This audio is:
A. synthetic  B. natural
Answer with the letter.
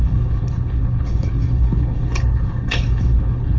A